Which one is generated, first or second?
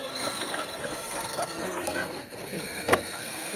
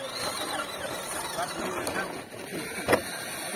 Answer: first